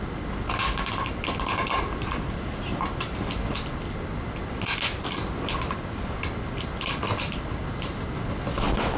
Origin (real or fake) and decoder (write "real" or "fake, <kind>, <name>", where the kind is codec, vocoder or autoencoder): real